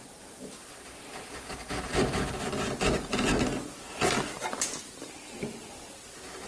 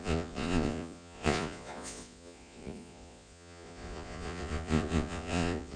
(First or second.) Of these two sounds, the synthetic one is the second